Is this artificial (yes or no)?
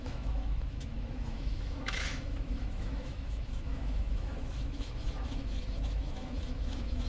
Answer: yes